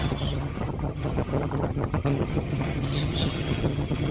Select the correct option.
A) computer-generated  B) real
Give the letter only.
A